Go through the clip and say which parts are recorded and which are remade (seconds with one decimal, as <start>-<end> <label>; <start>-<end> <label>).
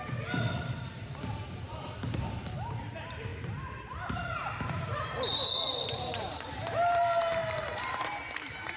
0.0-8.8 remade